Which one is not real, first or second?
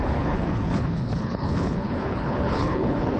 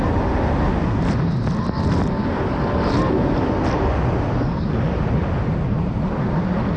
first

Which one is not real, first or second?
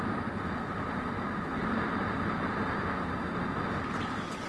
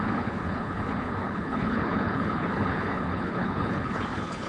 second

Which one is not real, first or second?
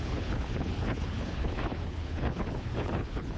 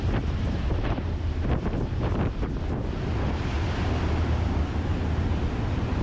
first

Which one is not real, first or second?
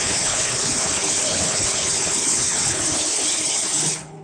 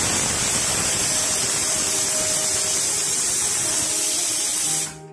first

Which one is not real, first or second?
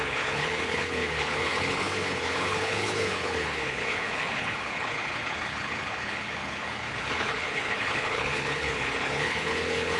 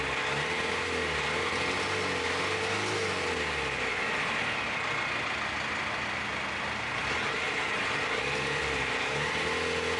first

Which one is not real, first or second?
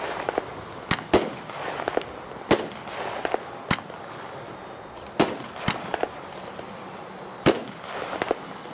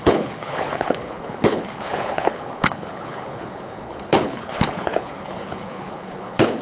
second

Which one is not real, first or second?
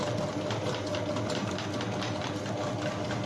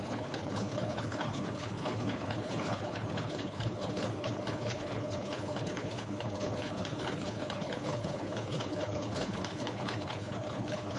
second